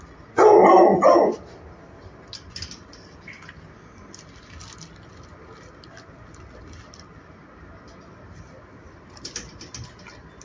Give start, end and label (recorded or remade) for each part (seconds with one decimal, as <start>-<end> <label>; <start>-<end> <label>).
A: 0.0-10.4 recorded